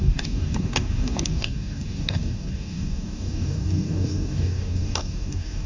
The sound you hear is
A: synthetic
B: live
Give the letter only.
A